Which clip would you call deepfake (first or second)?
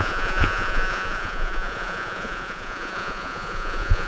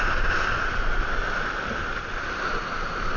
first